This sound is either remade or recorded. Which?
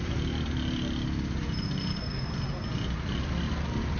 recorded